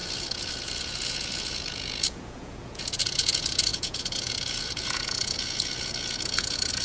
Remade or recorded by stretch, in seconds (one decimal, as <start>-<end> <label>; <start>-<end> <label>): 0.0-6.8 remade